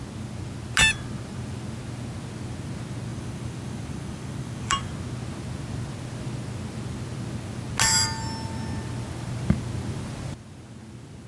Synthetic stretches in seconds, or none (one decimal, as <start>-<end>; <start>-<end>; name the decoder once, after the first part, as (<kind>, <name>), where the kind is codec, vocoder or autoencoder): 3.1-4.9 (vocoder, BigVGAN v2)